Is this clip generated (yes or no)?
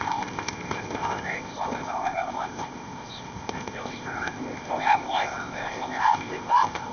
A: yes